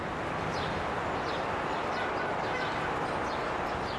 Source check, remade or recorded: recorded